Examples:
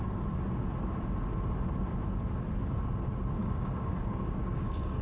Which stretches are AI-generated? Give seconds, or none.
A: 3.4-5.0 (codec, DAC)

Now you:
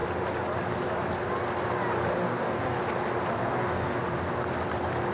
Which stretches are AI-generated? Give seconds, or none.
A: 2.2-2.8 (codec, DAC); 3.4-3.9

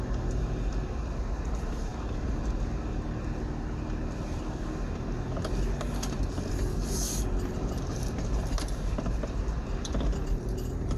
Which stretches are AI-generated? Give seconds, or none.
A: 6.7-7.2 (codec, DAC)

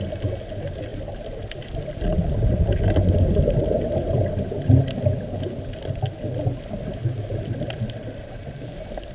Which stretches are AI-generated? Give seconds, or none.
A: none